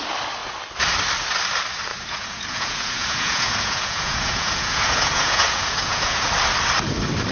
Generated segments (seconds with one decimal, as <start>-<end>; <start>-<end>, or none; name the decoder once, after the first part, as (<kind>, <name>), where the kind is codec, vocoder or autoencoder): 1.9-6.3 (vocoder, Vocos)